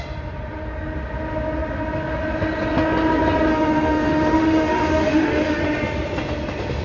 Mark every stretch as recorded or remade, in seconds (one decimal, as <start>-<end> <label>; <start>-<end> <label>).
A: 0.0-3.5 recorded; 3.5-5.6 remade; 5.6-6.8 recorded